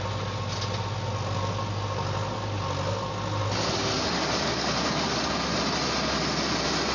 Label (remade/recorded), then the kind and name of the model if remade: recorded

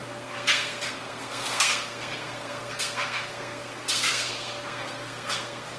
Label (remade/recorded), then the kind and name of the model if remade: remade, codec, SNAC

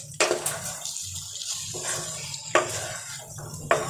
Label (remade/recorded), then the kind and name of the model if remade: recorded